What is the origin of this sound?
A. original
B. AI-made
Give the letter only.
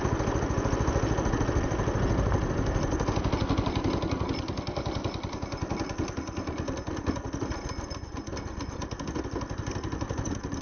A